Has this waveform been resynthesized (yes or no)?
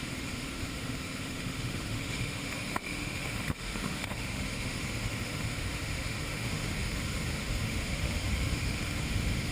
yes